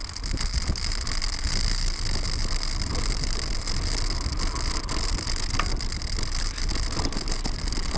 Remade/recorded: recorded